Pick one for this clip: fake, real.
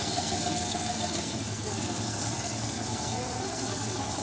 fake